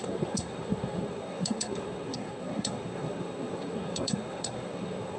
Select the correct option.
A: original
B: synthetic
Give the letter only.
B